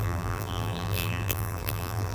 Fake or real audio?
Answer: fake